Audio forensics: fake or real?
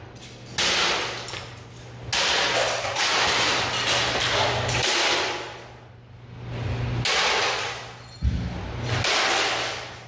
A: real